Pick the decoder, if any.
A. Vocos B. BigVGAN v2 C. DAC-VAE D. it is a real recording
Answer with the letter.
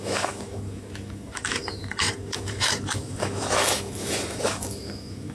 C